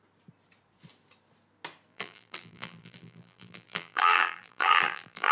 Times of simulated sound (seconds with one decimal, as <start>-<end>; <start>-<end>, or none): 1.9-5.3